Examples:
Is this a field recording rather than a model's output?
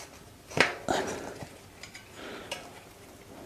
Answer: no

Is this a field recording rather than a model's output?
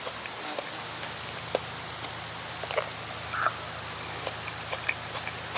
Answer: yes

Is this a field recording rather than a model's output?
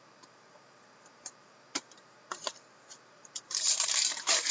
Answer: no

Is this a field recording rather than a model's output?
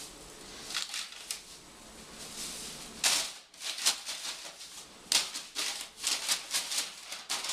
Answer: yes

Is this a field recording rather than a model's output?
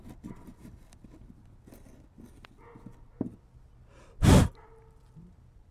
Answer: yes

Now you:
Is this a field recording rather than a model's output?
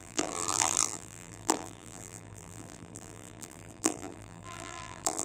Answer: no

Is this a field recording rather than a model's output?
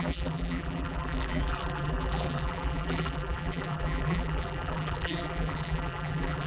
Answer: no